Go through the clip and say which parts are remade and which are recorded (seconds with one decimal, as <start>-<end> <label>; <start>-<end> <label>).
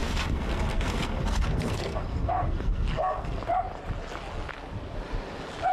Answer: 0.0-3.4 remade; 3.4-5.7 recorded